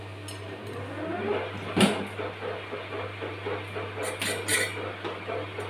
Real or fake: real